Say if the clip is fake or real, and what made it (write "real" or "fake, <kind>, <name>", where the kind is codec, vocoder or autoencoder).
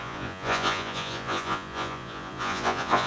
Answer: fake, vocoder, Vocos